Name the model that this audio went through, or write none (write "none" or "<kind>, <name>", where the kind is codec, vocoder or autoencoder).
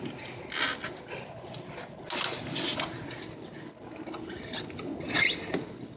none